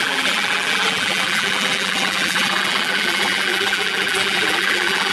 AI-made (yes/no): yes